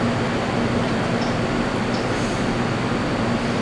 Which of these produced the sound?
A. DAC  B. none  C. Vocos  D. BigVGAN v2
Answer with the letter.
B